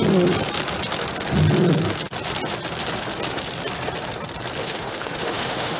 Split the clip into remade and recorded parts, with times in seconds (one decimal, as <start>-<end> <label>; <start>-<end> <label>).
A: 0.0-4.6 recorded; 4.6-5.8 remade